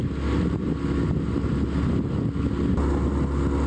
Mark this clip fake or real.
real